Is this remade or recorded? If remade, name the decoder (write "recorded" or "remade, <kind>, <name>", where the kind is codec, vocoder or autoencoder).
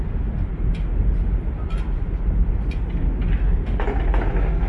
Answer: recorded